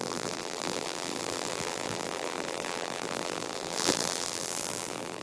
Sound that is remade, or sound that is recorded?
remade